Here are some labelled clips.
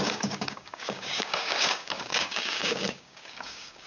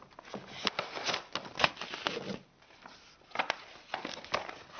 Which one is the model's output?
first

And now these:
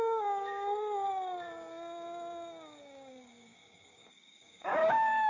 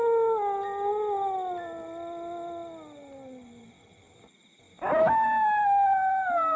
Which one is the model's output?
first